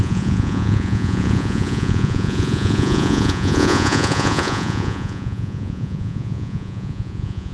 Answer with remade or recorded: remade